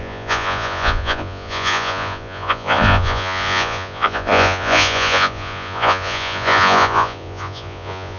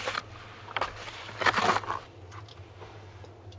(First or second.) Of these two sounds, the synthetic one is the first